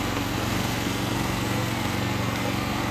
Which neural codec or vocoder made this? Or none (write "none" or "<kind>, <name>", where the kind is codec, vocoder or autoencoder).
codec, SNAC